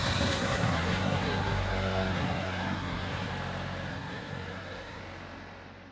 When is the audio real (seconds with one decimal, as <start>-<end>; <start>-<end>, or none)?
3.3-3.9; 5.0-5.9